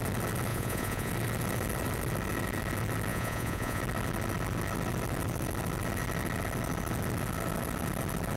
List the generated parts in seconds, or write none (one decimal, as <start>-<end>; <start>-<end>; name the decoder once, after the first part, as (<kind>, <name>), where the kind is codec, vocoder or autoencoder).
0.5-1.1 (vocoder, Vocos); 3.1-3.8